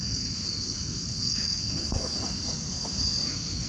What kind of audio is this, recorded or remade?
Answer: remade